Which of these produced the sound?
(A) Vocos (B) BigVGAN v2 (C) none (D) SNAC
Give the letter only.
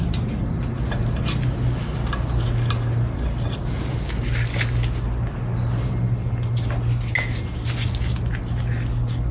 C